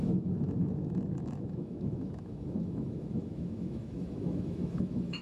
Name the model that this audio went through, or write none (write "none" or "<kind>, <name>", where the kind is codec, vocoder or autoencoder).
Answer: autoencoder, DAC-VAE